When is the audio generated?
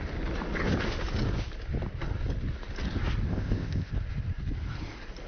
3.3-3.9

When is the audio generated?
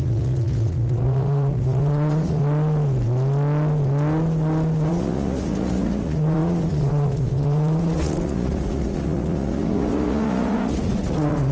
0.0-2.4; 4.9-11.5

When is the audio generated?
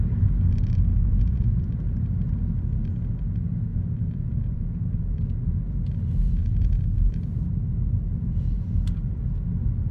0.9-1.6; 3.7-5.0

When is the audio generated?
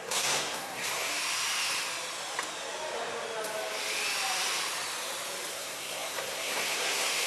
0.0-1.1; 5.5-7.3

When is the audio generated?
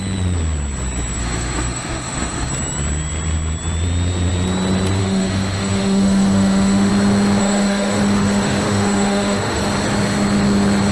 1.2-2.5; 5.0-6.9; 7.4-9.6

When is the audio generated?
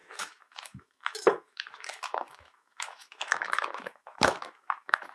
0.0-5.1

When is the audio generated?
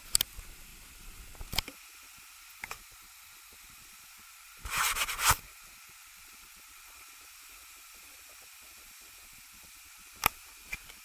none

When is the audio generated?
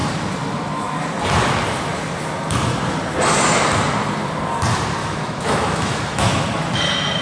5.0-6.4